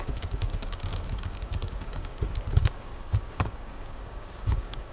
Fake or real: fake